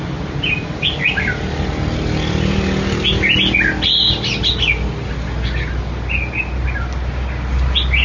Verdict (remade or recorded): recorded